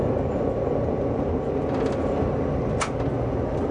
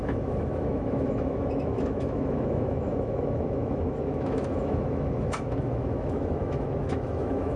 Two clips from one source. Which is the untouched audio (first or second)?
first